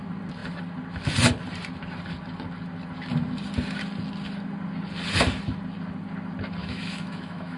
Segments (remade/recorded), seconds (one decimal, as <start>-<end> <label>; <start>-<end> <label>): 0.0-6.6 recorded; 6.6-7.6 remade